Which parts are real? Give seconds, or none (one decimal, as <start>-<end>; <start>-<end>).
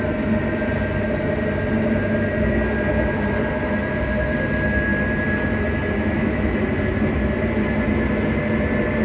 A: 0.0-9.0